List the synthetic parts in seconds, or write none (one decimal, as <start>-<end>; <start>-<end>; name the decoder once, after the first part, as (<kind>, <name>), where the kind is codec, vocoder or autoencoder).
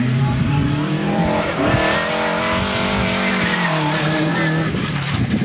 0.0-0.6 (vocoder, BigVGAN v2); 3.3-4.3; 4.8-5.4